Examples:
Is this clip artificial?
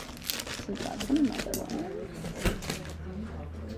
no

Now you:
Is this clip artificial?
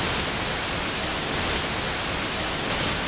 no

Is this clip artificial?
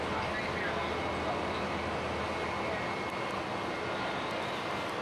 no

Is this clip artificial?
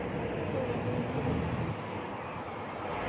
no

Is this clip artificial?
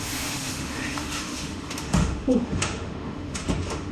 yes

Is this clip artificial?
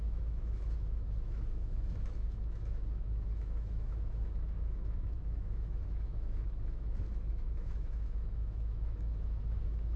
yes